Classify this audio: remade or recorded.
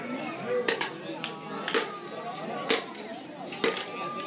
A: recorded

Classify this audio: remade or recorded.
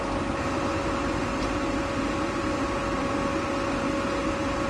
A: recorded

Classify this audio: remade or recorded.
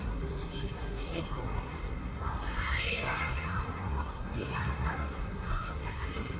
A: remade